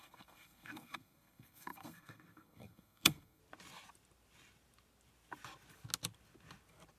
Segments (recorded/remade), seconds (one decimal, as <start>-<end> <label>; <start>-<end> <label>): 0.0-3.4 remade; 3.4-7.0 recorded